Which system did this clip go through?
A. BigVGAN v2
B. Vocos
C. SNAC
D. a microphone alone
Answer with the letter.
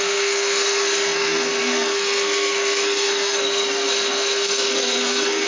C